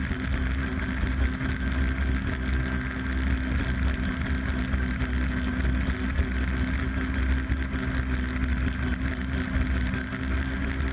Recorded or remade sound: recorded